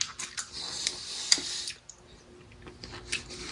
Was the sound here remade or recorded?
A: recorded